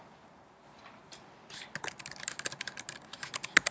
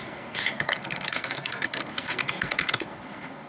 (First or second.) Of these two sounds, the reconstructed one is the second